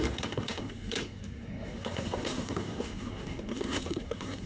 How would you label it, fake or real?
fake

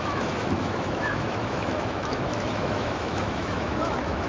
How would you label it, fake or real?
fake